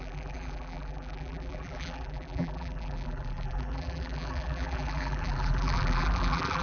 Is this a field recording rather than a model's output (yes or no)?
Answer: no